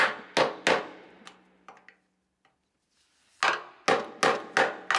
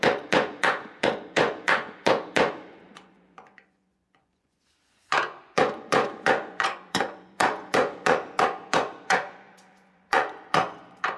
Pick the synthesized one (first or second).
second